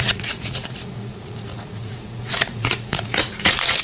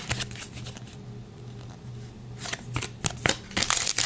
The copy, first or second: first